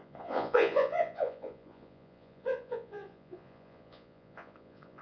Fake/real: fake